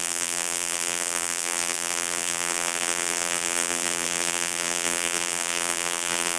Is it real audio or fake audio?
fake